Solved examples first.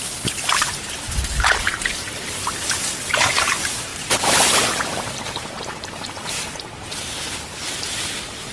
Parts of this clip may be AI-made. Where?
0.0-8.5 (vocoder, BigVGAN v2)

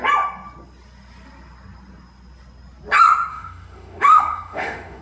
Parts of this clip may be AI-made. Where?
3.3-5.0 (autoencoder, DAC-VAE)

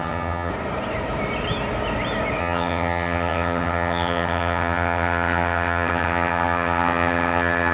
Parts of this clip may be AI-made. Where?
0.0-0.5 (vocoder, HiFi-GAN); 2.4-7.7